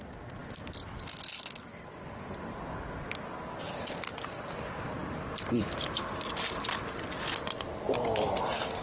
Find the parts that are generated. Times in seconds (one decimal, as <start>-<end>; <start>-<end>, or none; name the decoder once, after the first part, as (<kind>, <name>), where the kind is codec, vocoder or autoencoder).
none